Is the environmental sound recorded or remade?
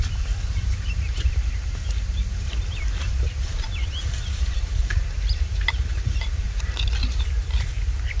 remade